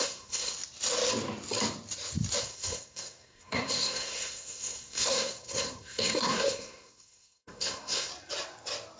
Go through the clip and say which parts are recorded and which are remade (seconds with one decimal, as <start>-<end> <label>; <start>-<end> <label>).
0.0-0.5 remade; 0.5-2.4 recorded; 2.4-8.1 remade; 8.1-9.0 recorded

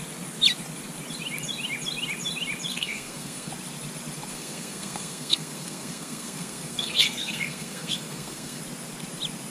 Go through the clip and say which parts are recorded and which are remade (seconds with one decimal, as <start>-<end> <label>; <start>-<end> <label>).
0.0-2.7 recorded; 2.7-3.5 remade; 3.5-4.3 recorded; 4.3-8.6 remade; 8.6-9.5 recorded